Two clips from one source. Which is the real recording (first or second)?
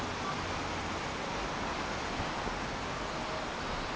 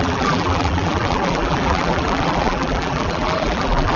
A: first